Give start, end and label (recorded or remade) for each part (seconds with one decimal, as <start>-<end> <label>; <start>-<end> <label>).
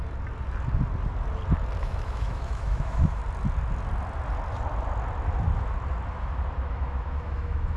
0.0-1.8 recorded; 1.8-3.2 remade; 3.2-6.6 recorded; 6.6-7.8 remade